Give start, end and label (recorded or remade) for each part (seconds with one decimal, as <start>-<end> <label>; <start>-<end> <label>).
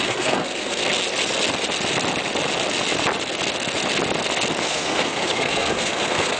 0.0-0.8 remade; 0.8-4.6 recorded; 4.6-6.4 remade